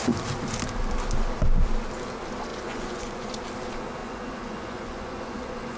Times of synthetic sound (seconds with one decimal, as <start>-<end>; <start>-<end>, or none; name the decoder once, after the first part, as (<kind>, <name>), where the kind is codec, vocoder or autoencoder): 2.5-3.3 (vocoder, Vocos); 4.0-5.8

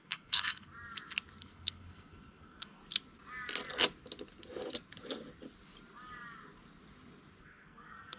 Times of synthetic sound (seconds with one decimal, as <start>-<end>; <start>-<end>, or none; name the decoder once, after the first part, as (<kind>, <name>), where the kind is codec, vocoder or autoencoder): 0.0-0.7 (codec, SNAC); 1.4-2.8; 7.4-8.2